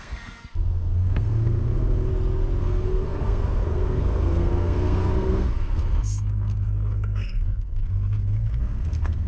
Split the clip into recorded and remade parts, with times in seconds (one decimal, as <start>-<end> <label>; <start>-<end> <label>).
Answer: 0.0-2.1 remade; 2.1-2.6 recorded; 2.6-9.3 remade

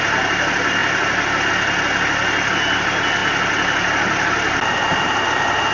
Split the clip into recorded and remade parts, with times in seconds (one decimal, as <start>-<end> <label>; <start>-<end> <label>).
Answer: 0.0-5.7 recorded

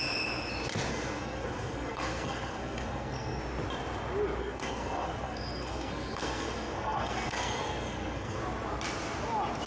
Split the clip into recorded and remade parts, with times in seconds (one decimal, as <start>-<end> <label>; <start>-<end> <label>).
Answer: 0.0-0.9 recorded; 0.9-3.4 remade; 3.4-4.4 recorded; 4.4-8.4 remade; 8.4-9.7 recorded

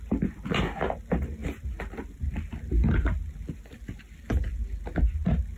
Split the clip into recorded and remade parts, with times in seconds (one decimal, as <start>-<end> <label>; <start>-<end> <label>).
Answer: 0.0-5.6 recorded

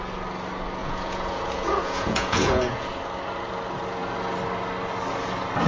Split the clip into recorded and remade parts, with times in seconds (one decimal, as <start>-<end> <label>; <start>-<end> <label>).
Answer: 0.0-0.8 recorded; 0.8-2.9 remade; 2.9-5.7 recorded

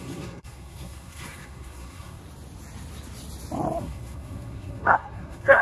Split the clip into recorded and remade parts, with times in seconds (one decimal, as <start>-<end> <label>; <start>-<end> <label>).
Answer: 0.0-2.2 remade; 2.2-3.8 recorded; 3.8-5.6 remade